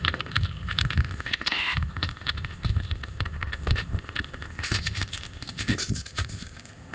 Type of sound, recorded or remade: remade